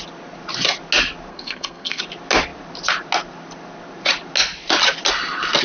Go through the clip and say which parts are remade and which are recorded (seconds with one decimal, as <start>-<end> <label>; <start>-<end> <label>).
0.0-1.3 recorded; 1.3-2.0 remade; 2.0-5.6 recorded